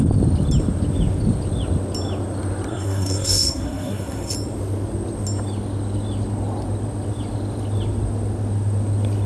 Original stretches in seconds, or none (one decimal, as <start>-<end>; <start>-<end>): 0.0-2.7; 4.3-9.3